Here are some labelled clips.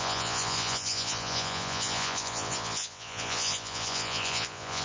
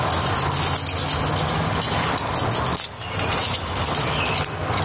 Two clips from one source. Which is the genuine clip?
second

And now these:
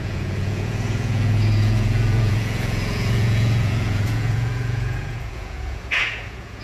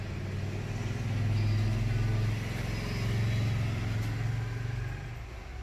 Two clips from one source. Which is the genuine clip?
second